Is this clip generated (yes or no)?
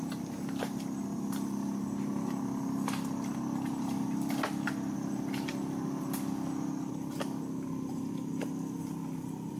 no